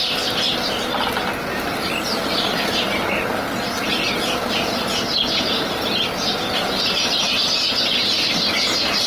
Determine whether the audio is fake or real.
real